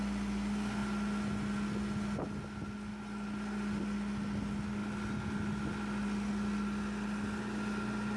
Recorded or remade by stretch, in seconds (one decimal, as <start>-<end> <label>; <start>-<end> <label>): 0.0-8.2 recorded